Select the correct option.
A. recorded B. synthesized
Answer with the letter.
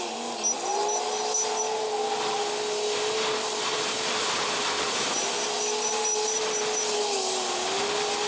A